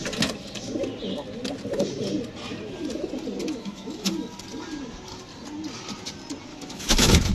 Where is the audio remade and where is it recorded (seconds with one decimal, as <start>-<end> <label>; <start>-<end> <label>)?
0.0-3.4 recorded; 3.4-4.1 remade; 4.1-6.5 recorded; 6.5-7.3 remade